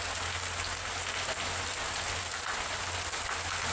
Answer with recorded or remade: recorded